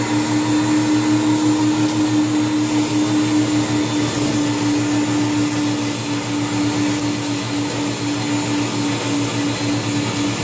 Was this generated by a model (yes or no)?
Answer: no